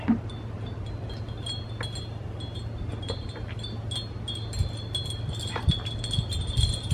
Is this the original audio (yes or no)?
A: yes